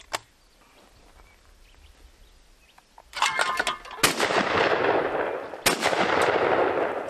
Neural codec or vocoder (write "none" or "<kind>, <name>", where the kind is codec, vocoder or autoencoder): none